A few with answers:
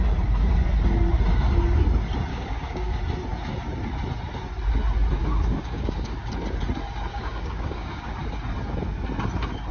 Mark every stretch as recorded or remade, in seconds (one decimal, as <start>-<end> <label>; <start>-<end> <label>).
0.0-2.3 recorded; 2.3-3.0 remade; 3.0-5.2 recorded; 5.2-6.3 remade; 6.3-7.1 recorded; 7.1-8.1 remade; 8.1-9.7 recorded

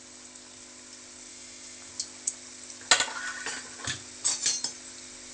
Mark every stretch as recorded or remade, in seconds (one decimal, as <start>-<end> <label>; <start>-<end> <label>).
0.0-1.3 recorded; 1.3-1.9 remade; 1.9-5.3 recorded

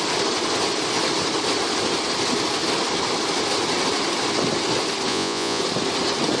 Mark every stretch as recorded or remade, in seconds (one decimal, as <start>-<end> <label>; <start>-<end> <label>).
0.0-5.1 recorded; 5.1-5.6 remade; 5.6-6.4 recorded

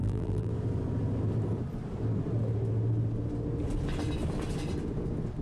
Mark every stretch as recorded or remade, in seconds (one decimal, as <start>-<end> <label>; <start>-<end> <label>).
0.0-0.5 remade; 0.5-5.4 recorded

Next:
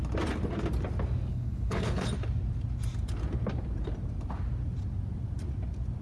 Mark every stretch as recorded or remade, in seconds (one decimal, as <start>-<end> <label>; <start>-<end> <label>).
0.0-1.3 recorded; 1.3-2.1 remade; 2.1-6.0 recorded

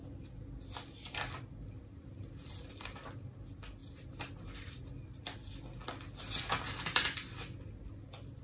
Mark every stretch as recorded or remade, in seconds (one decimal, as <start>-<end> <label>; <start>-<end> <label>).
0.0-8.4 recorded

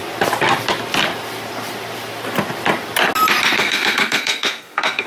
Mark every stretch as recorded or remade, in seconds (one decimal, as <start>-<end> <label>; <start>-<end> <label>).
0.0-3.6 recorded; 3.6-5.1 remade

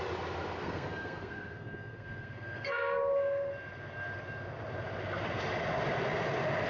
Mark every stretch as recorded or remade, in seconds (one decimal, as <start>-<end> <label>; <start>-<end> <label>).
0.0-0.6 recorded; 0.6-3.5 remade; 3.5-6.7 recorded